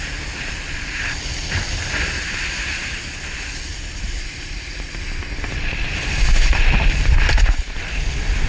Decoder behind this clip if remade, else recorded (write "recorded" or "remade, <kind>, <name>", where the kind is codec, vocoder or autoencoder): remade, vocoder, BigVGAN v2